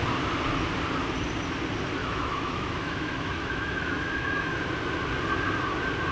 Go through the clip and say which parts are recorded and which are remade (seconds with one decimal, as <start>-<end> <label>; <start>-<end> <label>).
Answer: 0.0-2.0 recorded; 2.0-4.6 remade; 4.6-6.1 recorded